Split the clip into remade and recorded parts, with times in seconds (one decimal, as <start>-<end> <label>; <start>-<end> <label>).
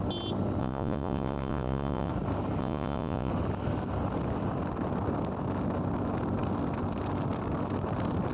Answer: 0.0-0.6 recorded; 0.6-2.1 remade; 2.1-2.6 recorded; 2.6-3.3 remade; 3.3-8.3 recorded